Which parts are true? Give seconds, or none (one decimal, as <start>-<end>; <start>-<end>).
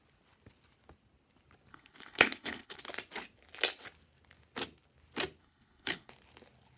0.0-1.7; 2.8-5.4; 6.1-6.8